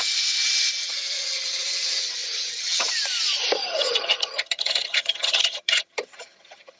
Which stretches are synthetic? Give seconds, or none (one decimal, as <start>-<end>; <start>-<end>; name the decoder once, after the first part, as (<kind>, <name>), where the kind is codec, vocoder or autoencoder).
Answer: 0.8-2.9 (vocoder, HiFi-GAN); 3.6-6.8